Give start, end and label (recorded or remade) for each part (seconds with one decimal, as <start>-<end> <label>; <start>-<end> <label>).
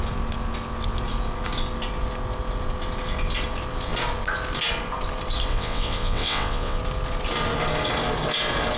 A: 0.0-5.5 recorded; 5.5-6.8 remade; 6.8-8.8 recorded